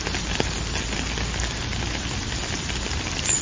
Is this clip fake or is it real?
real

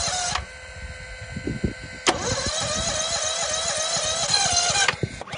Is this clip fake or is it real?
real